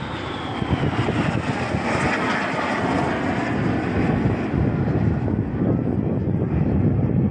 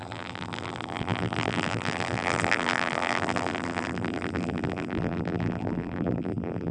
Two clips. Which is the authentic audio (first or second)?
first